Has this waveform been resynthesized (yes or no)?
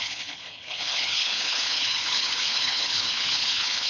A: yes